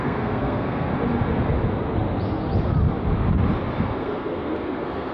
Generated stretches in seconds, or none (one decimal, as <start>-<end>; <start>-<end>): 0.0-0.9; 4.0-5.1